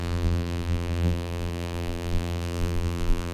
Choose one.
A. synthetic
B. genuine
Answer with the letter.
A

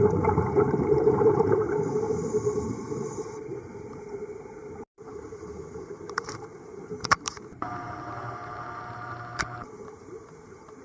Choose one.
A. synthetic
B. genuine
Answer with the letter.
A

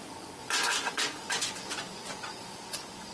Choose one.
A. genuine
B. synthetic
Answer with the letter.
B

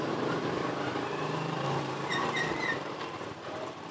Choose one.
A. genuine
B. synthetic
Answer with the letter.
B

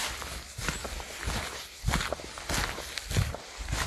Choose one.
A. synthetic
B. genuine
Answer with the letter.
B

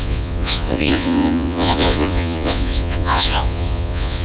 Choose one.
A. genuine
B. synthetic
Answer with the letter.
B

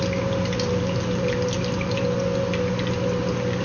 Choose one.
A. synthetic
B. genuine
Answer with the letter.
B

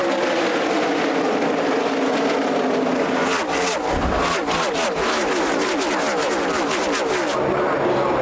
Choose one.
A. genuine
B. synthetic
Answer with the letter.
A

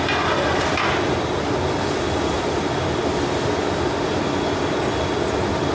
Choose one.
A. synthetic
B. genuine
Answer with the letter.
B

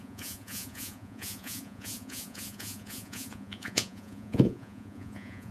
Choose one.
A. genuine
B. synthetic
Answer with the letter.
B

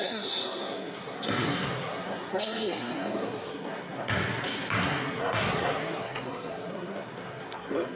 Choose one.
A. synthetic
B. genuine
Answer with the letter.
A